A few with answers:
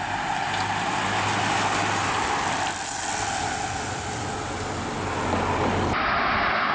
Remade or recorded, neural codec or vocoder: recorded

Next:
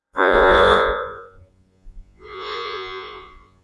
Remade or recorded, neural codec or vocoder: remade, vocoder, Vocos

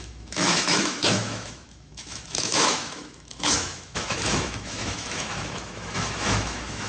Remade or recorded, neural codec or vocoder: remade, autoencoder, DAC-VAE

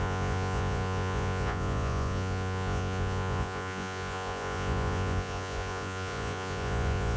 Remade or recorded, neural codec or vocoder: remade, vocoder, Vocos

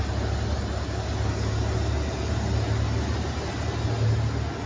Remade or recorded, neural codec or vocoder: recorded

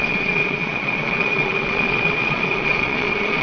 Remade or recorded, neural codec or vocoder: remade, vocoder, Vocos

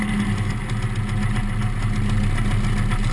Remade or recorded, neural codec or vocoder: recorded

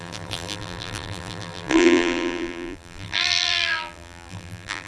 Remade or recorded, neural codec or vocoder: remade, vocoder, BigVGAN v2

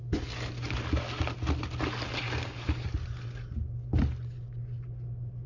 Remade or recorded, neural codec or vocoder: recorded